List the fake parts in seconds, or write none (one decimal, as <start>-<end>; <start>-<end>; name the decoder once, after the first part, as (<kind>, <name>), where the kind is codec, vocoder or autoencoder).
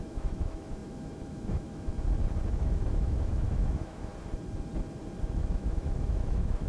0.0-1.9 (autoencoder, DAC-VAE); 2.5-4.1; 5.2-6.7